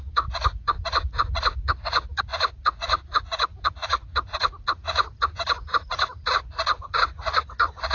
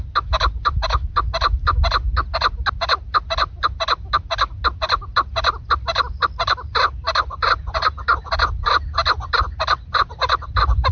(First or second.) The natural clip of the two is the second